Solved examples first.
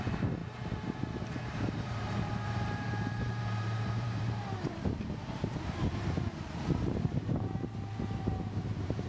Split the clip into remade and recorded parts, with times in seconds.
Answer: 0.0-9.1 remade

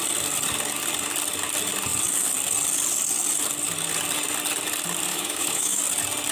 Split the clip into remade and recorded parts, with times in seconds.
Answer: 0.0-5.1 recorded; 5.1-5.8 remade; 5.8-6.3 recorded

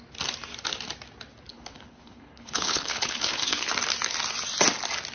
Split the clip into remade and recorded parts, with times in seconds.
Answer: 0.0-1.5 recorded; 1.5-3.7 remade; 3.7-5.1 recorded

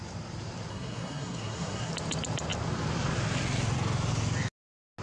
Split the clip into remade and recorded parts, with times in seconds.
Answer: 0.0-0.7 recorded; 0.7-1.9 remade; 1.9-5.0 recorded

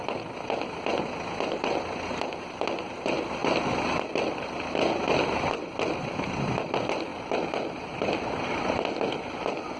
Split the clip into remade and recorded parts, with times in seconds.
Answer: 0.0-3.4 recorded; 3.4-4.0 remade; 4.0-7.1 recorded; 7.1-8.3 remade; 8.3-9.8 recorded

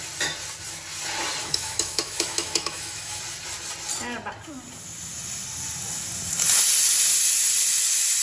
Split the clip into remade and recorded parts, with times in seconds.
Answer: 0.0-1.4 recorded; 1.4-3.2 remade; 3.2-8.2 recorded

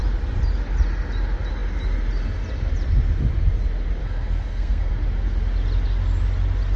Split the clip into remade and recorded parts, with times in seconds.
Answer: 0.0-4.0 recorded; 4.0-4.9 remade; 4.9-6.8 recorded

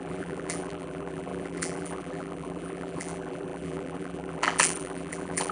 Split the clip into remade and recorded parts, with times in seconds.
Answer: 0.0-5.5 remade